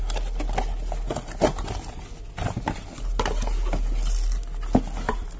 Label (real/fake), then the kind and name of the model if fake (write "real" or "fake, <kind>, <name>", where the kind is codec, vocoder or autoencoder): real